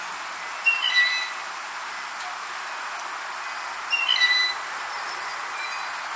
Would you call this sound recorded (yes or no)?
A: yes